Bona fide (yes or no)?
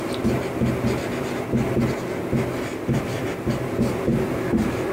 yes